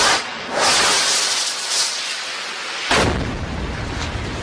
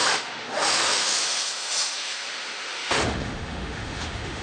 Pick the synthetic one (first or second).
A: second